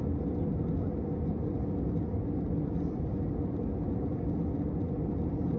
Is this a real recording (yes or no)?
yes